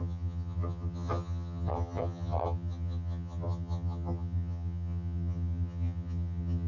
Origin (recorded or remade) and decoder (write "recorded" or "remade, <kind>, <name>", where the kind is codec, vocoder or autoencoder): remade, vocoder, HiFi-GAN